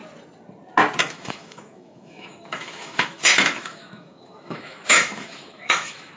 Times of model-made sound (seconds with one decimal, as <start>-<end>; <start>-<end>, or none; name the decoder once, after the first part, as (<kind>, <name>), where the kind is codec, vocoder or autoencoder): 1.0-6.2 (autoencoder, DAC-VAE)